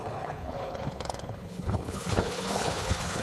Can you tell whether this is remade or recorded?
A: remade